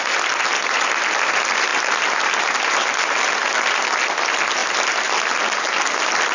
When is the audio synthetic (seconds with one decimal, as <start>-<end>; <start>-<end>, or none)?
none